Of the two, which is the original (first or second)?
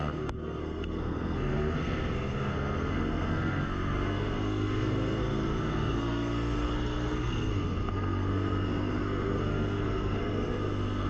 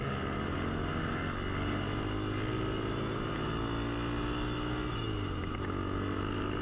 second